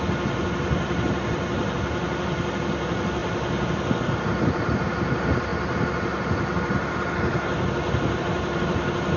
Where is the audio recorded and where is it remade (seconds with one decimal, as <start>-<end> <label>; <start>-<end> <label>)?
0.0-9.2 recorded